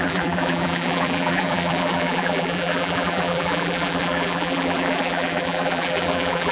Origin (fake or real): fake